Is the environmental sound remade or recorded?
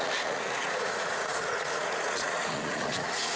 remade